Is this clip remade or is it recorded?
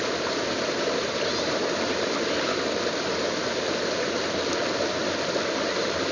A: recorded